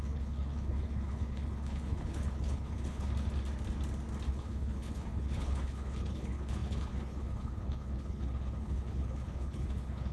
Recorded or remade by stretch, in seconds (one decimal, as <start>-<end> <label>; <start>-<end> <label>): 0.0-3.1 remade; 3.1-4.3 recorded; 4.3-10.1 remade